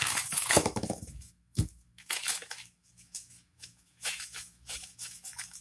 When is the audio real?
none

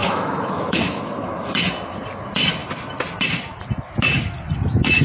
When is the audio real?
1.7-5.0

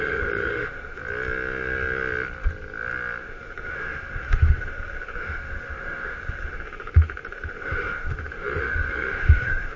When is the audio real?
1.0-3.2

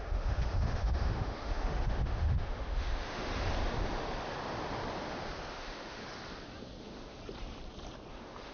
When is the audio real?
3.3-5.5; 6.0-6.8; 7.2-8.1

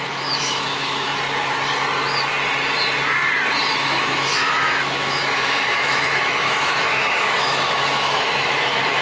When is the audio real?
1.1-3.8

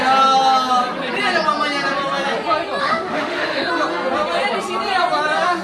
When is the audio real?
0.0-2.8; 3.7-5.6

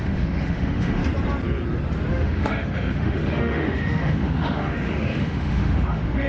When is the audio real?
1.0-2.1

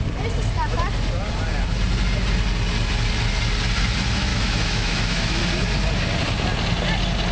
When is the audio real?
0.0-4.3; 5.4-7.3